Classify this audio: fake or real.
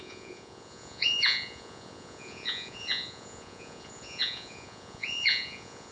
fake